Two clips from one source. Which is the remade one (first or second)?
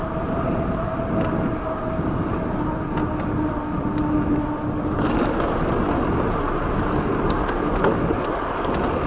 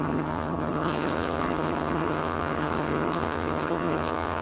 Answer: second